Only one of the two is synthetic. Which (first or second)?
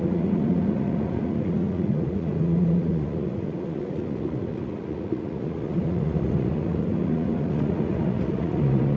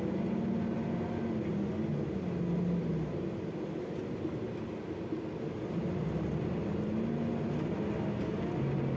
first